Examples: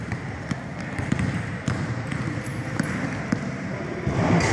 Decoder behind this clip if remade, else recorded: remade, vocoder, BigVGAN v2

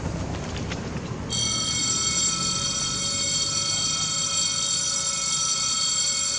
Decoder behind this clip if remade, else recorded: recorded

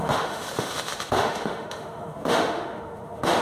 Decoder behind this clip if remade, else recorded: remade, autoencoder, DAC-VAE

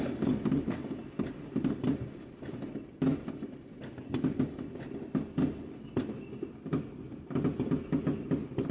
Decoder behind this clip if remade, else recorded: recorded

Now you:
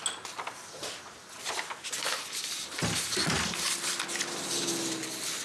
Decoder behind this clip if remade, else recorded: recorded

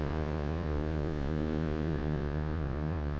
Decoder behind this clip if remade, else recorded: remade, vocoder, Vocos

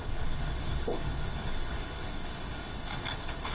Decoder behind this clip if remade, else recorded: remade, codec, HILCodec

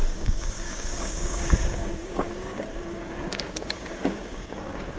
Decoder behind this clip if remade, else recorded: remade, codec, DAC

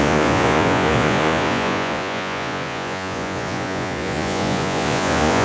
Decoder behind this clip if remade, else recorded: remade, vocoder, Vocos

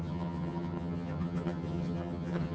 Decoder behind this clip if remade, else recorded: remade, vocoder, HiFi-GAN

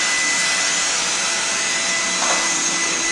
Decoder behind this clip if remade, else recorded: recorded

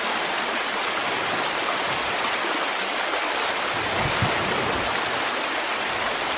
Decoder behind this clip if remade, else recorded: recorded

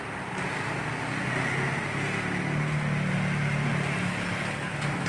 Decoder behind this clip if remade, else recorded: recorded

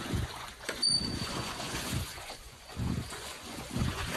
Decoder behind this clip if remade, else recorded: remade, vocoder, Vocos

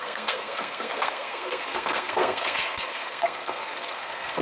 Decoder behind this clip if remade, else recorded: remade, codec, SNAC